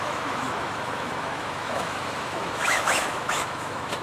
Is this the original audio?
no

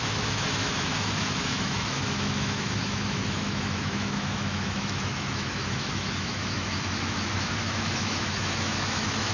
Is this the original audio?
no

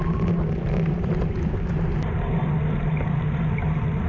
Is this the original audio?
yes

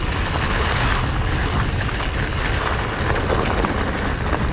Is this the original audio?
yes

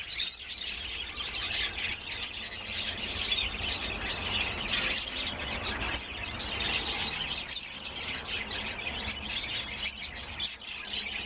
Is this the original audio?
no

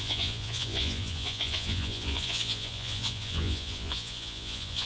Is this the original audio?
no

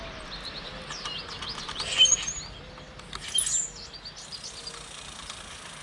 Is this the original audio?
yes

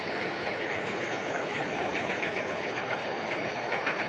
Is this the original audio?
no